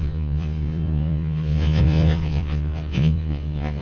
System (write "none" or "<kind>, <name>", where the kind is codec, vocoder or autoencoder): vocoder, Vocos